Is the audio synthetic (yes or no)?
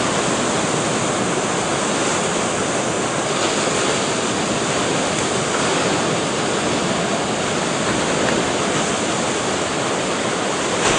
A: no